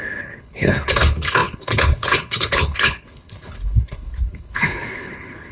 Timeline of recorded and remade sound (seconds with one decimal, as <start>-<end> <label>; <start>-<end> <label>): 0.0-5.5 remade